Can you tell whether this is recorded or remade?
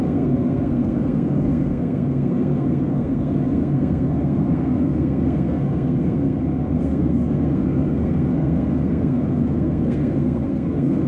remade